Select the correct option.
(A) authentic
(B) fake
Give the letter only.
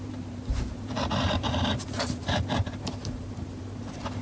B